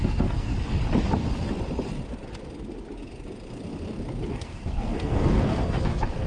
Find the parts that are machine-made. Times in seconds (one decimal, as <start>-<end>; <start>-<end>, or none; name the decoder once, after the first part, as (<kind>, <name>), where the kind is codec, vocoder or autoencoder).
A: 0.0-0.5 (codec, SNAC); 4.3-6.3